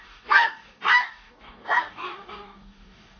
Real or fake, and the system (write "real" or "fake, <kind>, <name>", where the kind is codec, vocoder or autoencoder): fake, codec, DAC